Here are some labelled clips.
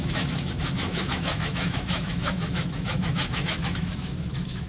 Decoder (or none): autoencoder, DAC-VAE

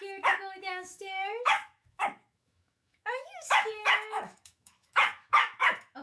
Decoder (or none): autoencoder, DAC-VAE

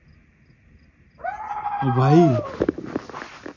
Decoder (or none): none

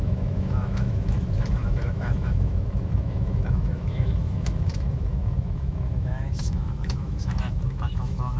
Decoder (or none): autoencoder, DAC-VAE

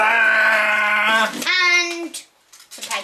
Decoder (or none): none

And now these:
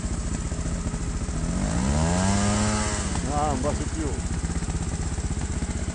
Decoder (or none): none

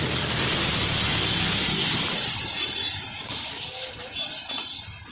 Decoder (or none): none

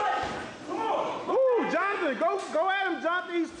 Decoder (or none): none